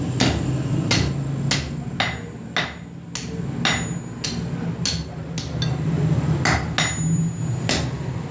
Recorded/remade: recorded